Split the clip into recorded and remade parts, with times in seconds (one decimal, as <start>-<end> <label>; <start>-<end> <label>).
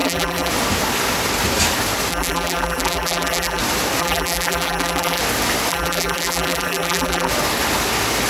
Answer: 0.0-0.5 remade; 0.5-2.1 recorded; 2.1-3.6 remade; 3.6-4.0 recorded; 4.0-5.2 remade; 5.2-5.7 recorded; 5.7-7.3 remade; 7.3-8.3 recorded